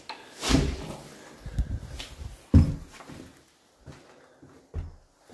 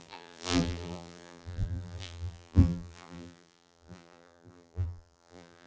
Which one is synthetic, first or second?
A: second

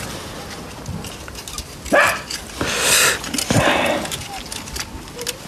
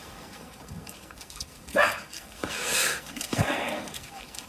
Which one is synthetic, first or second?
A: second